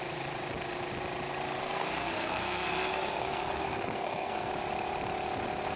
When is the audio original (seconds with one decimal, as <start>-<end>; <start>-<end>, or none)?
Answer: 0.0-1.6; 4.5-5.8